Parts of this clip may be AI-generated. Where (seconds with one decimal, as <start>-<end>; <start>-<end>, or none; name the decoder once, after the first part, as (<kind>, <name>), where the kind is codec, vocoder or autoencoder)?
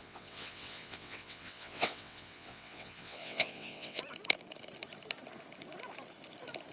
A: 0.0-4.0 (vocoder, WaveNeXt)